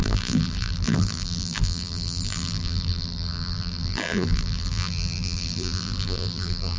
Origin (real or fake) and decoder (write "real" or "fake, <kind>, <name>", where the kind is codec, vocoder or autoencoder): fake, vocoder, BigVGAN v2